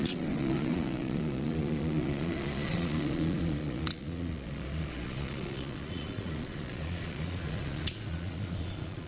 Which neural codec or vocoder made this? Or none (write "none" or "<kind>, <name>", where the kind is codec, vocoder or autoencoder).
vocoder, Vocos